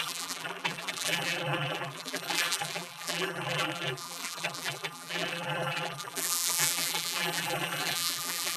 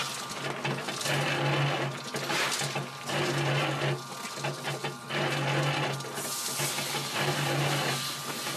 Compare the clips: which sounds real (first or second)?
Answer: second